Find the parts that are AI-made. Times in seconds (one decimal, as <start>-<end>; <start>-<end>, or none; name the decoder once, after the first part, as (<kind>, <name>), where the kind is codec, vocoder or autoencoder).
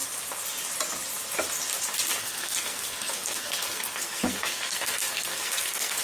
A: 2.2-6.0 (codec, SNAC)